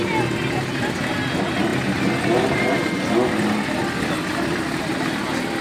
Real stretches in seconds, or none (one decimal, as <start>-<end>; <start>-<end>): 0.0-5.6